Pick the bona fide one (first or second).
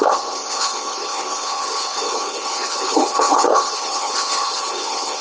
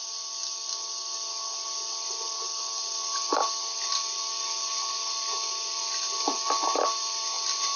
second